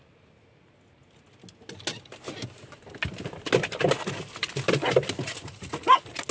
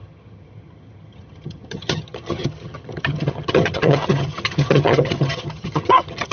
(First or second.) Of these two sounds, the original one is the first